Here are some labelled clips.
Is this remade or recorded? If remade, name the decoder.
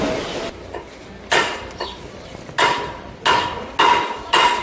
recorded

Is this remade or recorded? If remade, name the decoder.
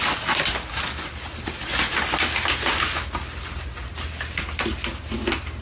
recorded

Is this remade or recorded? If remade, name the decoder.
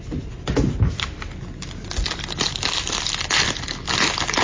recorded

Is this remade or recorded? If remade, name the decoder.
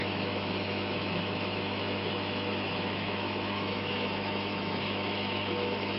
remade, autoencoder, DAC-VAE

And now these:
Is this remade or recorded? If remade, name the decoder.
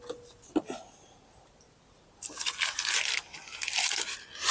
recorded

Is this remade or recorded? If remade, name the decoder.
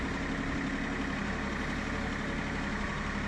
recorded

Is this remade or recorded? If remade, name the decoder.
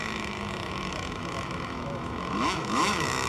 remade, autoencoder, DAC-VAE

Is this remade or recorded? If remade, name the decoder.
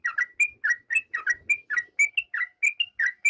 recorded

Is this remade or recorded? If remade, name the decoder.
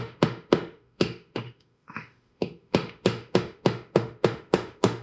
remade, autoencoder, DAC-VAE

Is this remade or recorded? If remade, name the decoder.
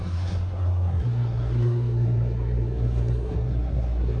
remade, codec, SNAC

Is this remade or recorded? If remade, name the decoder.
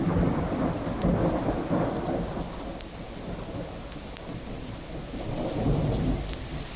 recorded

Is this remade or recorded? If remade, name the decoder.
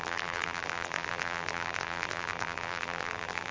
remade, vocoder, BigVGAN v2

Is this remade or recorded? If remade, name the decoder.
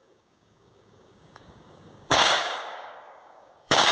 remade, codec, DAC